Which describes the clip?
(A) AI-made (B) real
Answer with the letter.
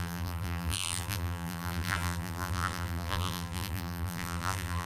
A